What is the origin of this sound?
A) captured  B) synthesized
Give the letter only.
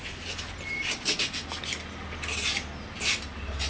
A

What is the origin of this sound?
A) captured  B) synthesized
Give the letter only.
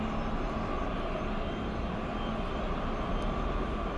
A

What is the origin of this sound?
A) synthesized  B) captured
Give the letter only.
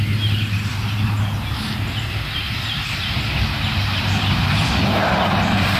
B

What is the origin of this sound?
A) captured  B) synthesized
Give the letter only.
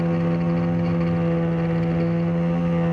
A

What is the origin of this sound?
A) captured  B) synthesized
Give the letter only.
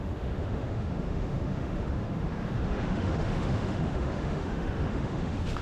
B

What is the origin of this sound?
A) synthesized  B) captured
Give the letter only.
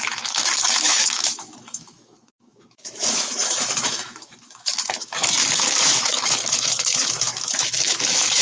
A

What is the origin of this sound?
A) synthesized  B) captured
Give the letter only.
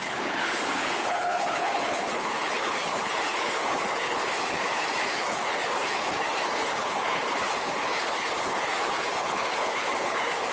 A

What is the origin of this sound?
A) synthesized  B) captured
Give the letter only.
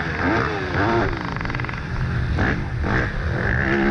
B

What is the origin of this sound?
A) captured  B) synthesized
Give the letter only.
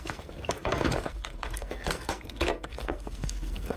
B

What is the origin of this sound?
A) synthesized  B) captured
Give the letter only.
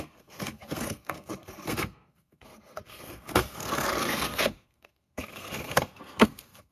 A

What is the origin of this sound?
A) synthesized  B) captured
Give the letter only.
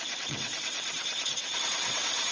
A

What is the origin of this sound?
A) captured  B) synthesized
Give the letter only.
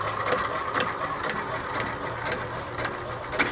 A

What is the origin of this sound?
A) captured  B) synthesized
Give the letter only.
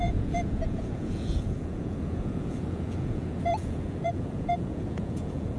B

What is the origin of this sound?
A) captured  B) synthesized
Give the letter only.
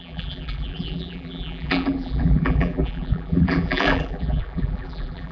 B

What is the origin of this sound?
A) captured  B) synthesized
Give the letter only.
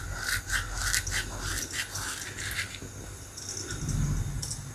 A